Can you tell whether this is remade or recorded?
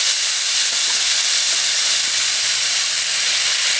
recorded